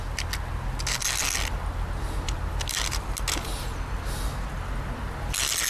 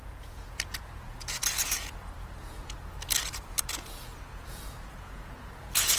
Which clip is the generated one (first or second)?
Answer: second